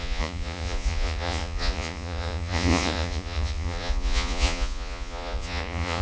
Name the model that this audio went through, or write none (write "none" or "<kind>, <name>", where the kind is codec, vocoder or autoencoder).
vocoder, Vocos